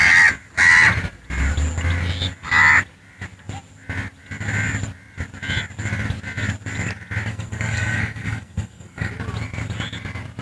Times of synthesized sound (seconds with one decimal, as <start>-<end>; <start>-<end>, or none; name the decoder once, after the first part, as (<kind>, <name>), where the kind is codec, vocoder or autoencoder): 7.3-9.1 (codec, SNAC)